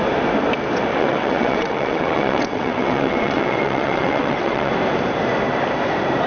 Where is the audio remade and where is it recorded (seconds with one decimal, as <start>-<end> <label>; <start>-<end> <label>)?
0.0-0.9 recorded; 0.9-4.7 remade; 4.7-6.3 recorded